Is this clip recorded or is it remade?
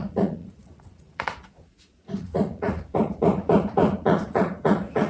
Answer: remade